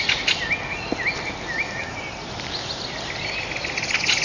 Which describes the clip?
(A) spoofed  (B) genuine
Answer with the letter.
B